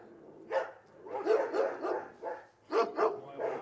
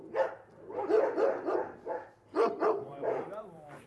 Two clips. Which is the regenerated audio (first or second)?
second